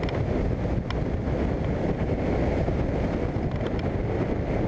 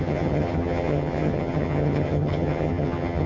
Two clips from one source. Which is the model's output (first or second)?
second